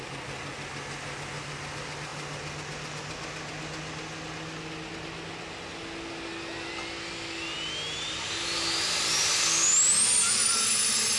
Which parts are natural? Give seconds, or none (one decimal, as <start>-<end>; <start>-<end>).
0.0-11.2

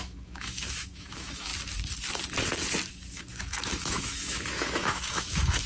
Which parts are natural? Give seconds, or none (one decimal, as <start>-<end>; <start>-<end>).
1.5-2.9

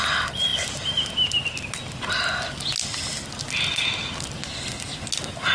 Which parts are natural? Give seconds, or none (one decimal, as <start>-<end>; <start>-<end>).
0.0-5.5

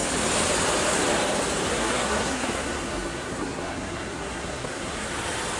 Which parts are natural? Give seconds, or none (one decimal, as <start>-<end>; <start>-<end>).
0.0-1.7; 5.1-5.6

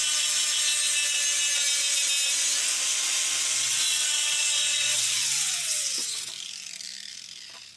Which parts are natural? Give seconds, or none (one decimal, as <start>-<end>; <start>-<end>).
0.0-3.7; 6.3-7.8

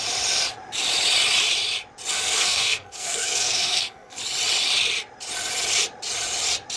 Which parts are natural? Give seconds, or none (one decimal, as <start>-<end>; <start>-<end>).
0.0-2.1; 4.2-6.8

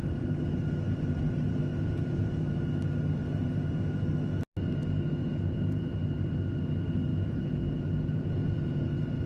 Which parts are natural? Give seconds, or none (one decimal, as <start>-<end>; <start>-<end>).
0.0-1.7; 2.4-5.2; 5.9-7.1; 8.9-9.3

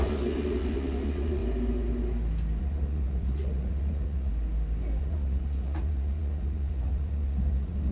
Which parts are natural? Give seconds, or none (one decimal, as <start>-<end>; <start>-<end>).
1.4-2.6; 4.3-5.0